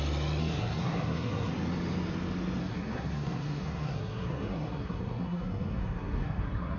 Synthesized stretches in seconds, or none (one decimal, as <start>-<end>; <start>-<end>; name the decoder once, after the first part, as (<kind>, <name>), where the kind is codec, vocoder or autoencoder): 0.4-1.5 (codec, SNAC); 2.6-6.8